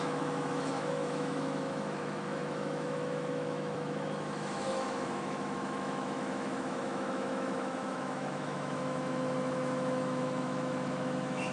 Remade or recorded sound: remade